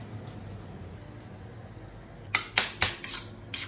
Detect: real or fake real